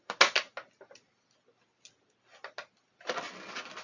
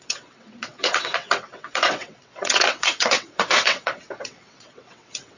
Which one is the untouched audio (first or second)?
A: first